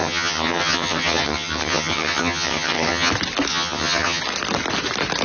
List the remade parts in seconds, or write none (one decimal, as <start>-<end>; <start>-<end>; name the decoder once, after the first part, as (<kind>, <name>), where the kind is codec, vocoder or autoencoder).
0.0-3.1 (vocoder, HiFi-GAN); 3.5-4.2